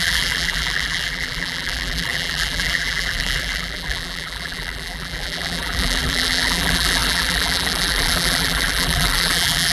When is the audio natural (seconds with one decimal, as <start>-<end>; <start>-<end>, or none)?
none